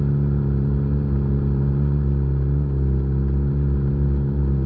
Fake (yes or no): no